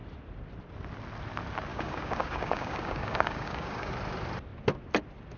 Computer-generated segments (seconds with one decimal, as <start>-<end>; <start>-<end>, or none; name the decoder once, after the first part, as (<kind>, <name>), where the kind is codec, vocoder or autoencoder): 1.7-3.9 (codec, DAC)